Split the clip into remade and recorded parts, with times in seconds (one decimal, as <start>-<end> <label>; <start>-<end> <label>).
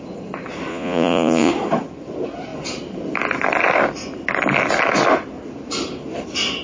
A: 0.0-0.7 recorded; 0.7-1.5 remade; 1.5-6.6 recorded